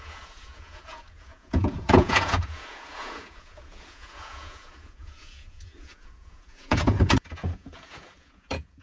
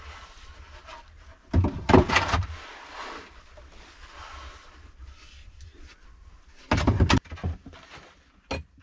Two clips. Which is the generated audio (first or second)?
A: first